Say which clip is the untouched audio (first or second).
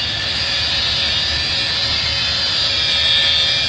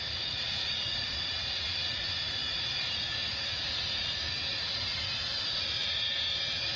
first